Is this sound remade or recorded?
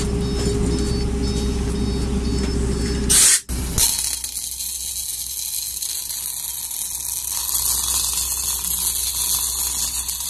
recorded